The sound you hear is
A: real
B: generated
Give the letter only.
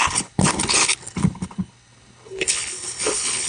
B